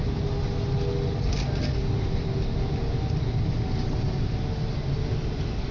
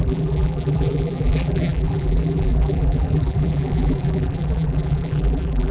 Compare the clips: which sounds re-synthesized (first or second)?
second